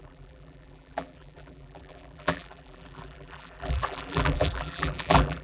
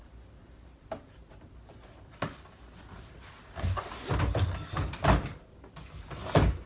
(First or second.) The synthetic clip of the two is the first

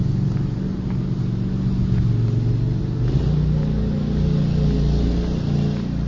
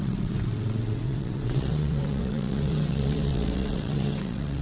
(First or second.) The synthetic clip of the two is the second